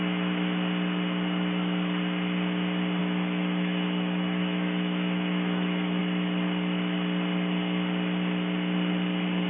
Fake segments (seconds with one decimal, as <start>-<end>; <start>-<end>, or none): 3.0-6.0